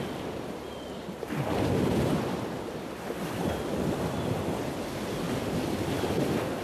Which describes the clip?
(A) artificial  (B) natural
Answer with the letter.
B